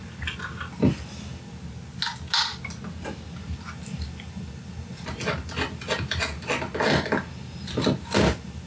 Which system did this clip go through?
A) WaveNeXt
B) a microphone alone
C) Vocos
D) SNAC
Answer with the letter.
B